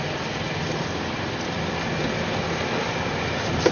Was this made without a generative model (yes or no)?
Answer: yes